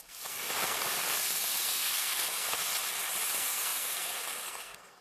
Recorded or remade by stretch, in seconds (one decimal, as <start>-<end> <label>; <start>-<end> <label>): 0.0-2.7 remade; 2.7-3.3 recorded; 3.3-5.0 remade